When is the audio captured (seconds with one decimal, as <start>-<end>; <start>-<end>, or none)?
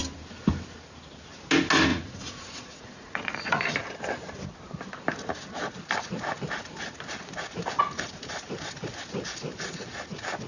0.0-1.9; 3.6-10.5